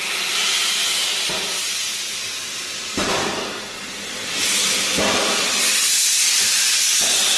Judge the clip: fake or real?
real